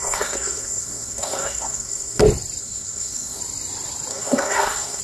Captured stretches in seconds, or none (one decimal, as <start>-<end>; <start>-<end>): 2.2-2.6; 3.4-4.1